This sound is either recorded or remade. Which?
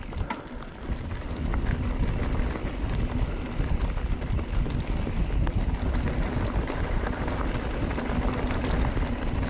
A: recorded